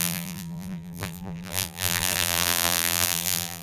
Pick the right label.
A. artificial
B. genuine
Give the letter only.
A